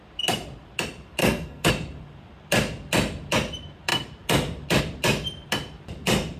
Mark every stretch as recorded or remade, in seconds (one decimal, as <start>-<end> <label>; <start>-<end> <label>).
0.0-1.2 recorded; 1.2-1.7 remade; 1.7-6.4 recorded

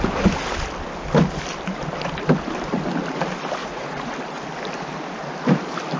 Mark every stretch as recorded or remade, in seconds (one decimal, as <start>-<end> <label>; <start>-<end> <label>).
0.0-3.6 recorded; 3.6-4.1 remade; 4.1-6.0 recorded

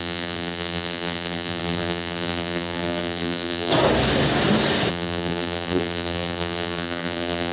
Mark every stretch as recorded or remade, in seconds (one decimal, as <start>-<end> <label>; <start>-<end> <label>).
0.0-3.7 remade; 3.7-4.9 recorded; 4.9-7.5 remade

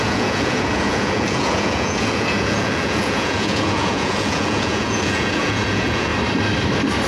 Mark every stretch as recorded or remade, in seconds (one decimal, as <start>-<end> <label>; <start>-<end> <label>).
0.0-6.1 remade; 6.1-7.1 recorded

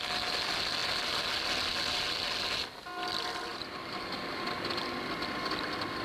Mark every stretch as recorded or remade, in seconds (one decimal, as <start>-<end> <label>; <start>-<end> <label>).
0.0-3.5 recorded; 3.5-4.8 remade; 4.8-6.0 recorded